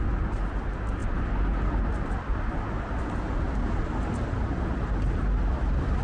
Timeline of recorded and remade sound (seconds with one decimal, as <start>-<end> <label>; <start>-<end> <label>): 0.0-6.0 recorded